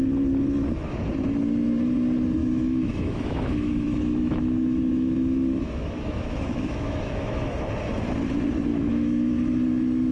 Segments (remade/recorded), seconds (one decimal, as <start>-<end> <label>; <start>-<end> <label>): 0.0-2.4 recorded; 2.4-7.6 remade; 7.6-8.7 recorded; 8.7-9.3 remade; 9.3-10.1 recorded